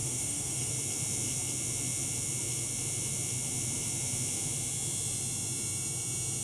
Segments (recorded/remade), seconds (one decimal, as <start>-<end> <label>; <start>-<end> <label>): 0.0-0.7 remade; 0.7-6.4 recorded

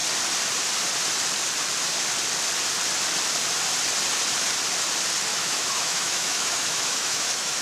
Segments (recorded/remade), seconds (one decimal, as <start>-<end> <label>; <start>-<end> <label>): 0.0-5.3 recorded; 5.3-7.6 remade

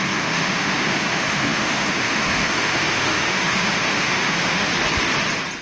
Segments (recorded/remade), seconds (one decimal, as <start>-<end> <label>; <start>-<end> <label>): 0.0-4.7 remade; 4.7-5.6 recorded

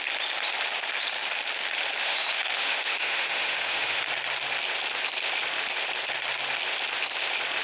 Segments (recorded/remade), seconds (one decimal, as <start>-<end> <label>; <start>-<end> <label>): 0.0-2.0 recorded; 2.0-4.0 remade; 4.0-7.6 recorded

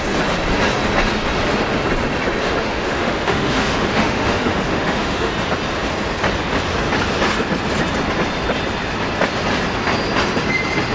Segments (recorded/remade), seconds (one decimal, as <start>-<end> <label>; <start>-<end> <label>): 0.0-2.4 recorded; 2.4-5.3 remade; 5.3-10.9 recorded